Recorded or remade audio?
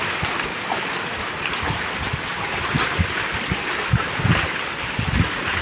recorded